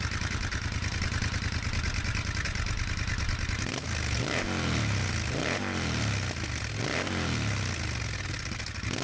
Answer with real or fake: real